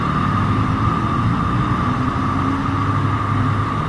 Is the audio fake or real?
real